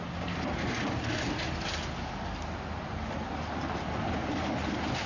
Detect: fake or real real